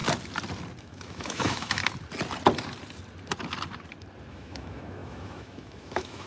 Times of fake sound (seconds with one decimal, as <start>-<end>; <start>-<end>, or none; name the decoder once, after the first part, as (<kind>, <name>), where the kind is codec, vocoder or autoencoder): 0.8-1.8 (autoencoder, DAC-VAE); 4.3-6.3